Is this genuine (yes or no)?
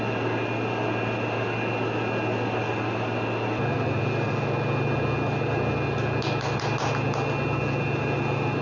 yes